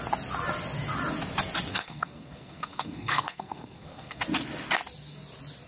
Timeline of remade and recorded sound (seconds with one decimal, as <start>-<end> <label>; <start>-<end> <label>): 0.0-1.7 recorded; 1.7-4.2 remade; 4.2-5.7 recorded